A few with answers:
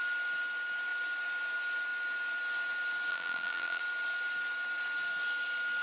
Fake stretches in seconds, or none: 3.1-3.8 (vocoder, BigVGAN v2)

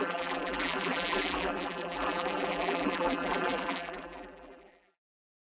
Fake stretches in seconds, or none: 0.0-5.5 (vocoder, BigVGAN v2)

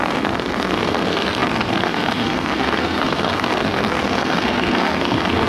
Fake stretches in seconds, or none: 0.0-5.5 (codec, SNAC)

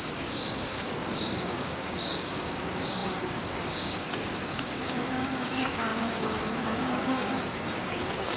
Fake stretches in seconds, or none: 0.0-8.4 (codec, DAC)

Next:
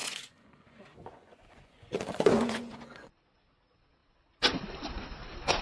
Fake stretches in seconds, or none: 0.0-3.1 (vocoder, Vocos)